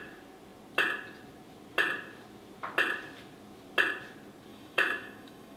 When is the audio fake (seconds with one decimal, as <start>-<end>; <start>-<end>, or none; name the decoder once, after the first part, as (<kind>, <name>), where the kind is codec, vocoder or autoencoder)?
4.5-5.6 (autoencoder, DAC-VAE)